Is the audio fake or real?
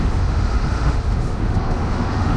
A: fake